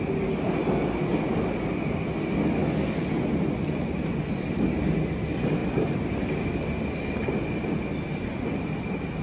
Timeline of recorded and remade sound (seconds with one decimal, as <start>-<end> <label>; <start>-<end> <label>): 0.0-5.6 recorded; 5.6-6.2 remade; 6.2-9.2 recorded